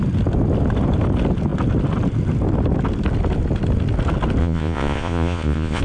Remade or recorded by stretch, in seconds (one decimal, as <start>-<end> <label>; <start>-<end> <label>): 0.0-4.4 recorded; 4.4-5.8 remade